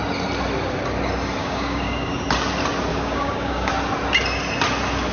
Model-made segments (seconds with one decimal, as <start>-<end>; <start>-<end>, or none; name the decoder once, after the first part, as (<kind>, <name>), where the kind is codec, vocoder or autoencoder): 1.4-2.2 (codec, DAC); 2.9-3.7

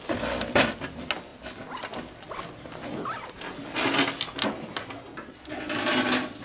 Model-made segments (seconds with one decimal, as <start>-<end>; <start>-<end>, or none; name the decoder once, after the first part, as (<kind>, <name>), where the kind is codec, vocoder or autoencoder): none

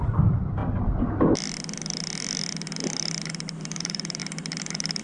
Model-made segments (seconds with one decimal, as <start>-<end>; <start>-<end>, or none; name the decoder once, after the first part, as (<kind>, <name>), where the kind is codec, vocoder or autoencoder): 0.0-0.6 (vocoder, BigVGAN v2); 3.6-4.2

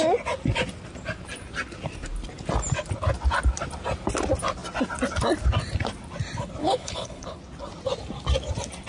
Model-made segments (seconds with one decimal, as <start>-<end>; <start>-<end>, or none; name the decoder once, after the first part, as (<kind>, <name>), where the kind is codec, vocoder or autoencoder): 6.6-7.4 (codec, HILCodec)

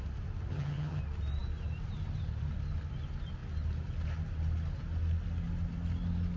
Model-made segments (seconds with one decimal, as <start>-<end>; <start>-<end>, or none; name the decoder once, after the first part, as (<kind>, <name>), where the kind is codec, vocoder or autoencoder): 0.5-1.0 (vocoder, HiFi-GAN)

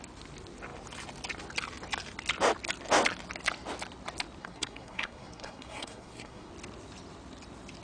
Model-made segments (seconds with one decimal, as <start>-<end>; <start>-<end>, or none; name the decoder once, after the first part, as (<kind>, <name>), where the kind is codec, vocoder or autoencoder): 4.4-6.5 (codec, SNAC)

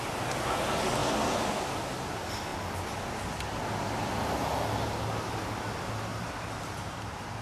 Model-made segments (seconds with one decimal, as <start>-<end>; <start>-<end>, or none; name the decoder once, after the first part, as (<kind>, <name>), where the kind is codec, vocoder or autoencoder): 6.1-7.4 (vocoder, BigVGAN v2)

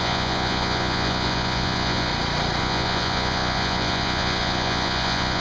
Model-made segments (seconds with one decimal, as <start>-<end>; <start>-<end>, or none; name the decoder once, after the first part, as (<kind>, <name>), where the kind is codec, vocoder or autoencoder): 0.0-2.1 (vocoder, Vocos); 2.6-5.4